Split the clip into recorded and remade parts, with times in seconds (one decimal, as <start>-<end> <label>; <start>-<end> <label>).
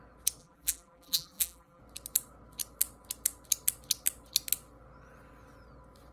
0.0-0.4 recorded; 0.4-1.8 remade; 1.8-6.1 recorded